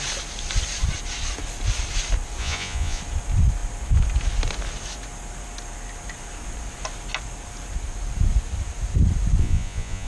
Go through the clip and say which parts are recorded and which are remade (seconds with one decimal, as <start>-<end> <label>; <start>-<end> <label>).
0.0-2.4 recorded; 2.4-3.0 remade; 3.0-9.4 recorded; 9.4-10.1 remade